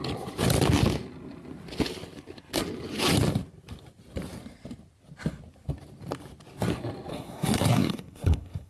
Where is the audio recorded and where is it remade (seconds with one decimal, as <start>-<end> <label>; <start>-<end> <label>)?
0.0-7.1 recorded; 7.1-8.7 remade